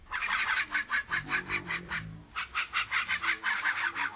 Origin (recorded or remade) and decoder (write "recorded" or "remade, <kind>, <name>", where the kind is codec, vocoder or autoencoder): recorded